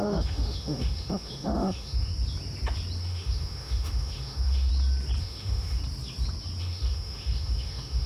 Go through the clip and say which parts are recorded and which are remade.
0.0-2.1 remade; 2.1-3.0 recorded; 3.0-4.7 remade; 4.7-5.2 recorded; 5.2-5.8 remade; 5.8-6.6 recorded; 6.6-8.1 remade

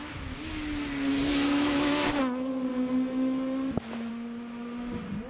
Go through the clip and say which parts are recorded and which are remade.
0.0-1.1 recorded; 1.1-2.2 remade; 2.2-2.7 recorded; 2.7-4.1 remade; 4.1-5.3 recorded

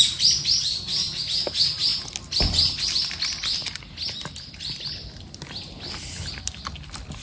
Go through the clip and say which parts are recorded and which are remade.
0.0-7.2 recorded

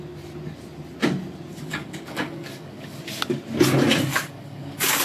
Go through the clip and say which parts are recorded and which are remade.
0.0-1.5 recorded; 1.5-3.0 remade; 3.0-4.1 recorded; 4.1-5.0 remade